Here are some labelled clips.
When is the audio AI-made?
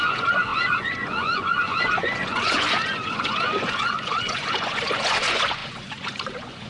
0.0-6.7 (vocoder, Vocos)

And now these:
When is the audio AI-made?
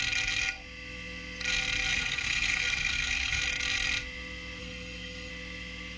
1.9-3.4 (codec, SNAC); 4.6-5.3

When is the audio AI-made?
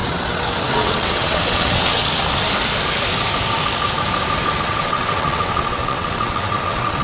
0.0-2.0 (vocoder, WaveNeXt); 4.6-7.0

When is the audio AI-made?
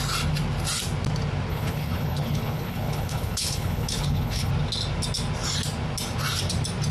1.5-4.5 (codec, HILCodec)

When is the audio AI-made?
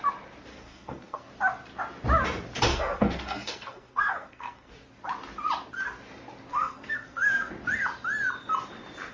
0.5-1.3 (codec, SNAC); 2.7-4.7; 6.5-7.5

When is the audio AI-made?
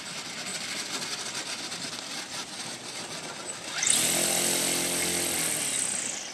0.5-1.1 (vocoder, BigVGAN v2)